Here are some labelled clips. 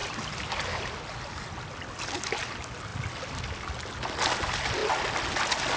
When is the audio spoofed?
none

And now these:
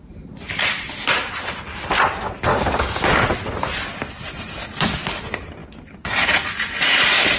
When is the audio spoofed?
2.5-3.1 (codec, DAC)

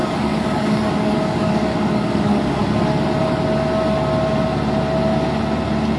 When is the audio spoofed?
0.0-2.6 (codec, DAC)

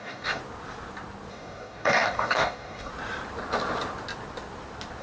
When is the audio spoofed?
0.0-0.4 (codec, DAC); 1.3-2.9